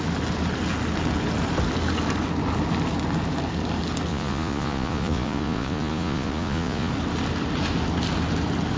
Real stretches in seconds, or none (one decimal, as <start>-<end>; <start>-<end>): 0.0-4.1; 6.9-8.8